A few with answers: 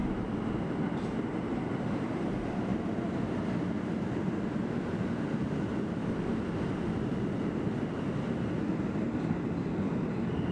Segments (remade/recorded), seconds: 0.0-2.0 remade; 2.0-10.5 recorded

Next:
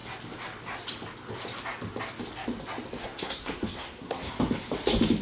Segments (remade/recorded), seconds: 0.0-3.0 recorded; 3.0-4.3 remade; 4.3-5.2 recorded

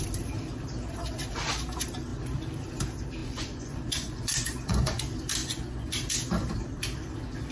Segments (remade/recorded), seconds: 0.0-3.2 recorded; 3.2-5.0 remade; 5.0-5.4 recorded; 5.4-5.9 remade; 5.9-7.5 recorded

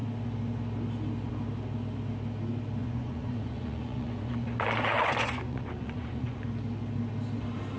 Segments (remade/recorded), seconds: 0.0-2.8 recorded; 2.8-6.4 remade; 6.4-7.8 recorded

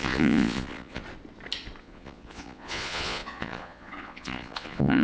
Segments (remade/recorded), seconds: 0.0-1.0 remade; 1.0-1.8 recorded; 1.8-5.0 remade

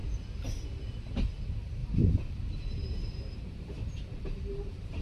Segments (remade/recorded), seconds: 0.0-1.8 recorded; 1.8-5.0 remade